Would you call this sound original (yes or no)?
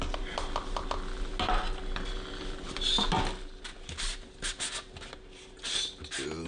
yes